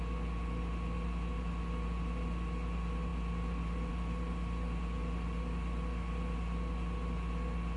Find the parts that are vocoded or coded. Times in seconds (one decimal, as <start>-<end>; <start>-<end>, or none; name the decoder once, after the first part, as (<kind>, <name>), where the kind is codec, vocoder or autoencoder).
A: none